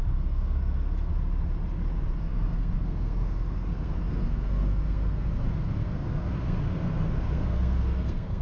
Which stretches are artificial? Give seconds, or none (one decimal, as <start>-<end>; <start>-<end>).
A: 0.0-1.1; 2.2-8.4